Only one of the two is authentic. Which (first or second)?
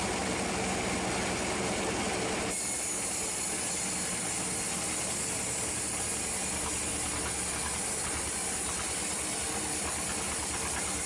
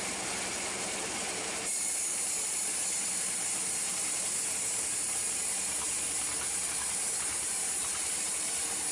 first